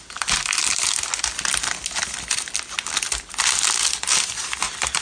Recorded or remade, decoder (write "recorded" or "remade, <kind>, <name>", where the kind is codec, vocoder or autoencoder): recorded